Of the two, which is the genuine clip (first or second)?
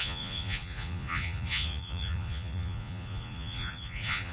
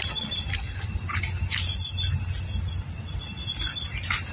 second